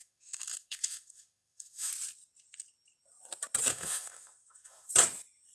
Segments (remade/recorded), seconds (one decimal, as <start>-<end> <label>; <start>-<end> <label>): 0.0-1.9 remade; 1.9-3.7 recorded; 3.7-4.9 remade; 4.9-5.5 recorded